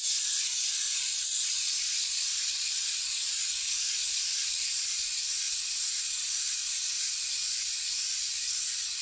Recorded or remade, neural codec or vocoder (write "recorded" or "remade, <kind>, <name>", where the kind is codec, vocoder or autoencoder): remade, vocoder, BigVGAN v2